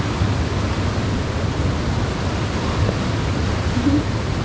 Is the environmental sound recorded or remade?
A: recorded